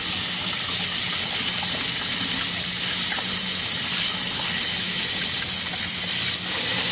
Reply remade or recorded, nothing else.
recorded